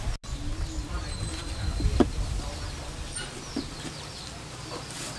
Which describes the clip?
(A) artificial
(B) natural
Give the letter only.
B